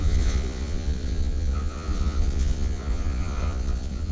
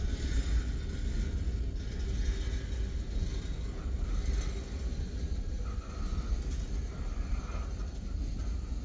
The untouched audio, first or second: second